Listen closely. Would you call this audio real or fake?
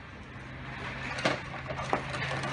real